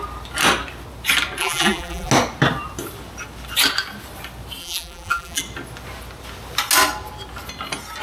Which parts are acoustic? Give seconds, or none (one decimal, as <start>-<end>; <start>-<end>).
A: 0.0-1.4; 2.1-4.6; 5.4-8.0